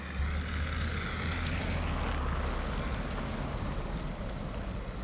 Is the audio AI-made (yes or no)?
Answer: no